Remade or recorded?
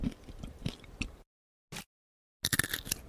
recorded